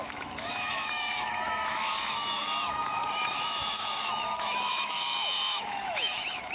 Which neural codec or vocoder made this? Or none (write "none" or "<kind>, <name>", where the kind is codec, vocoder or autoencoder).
autoencoder, DAC-VAE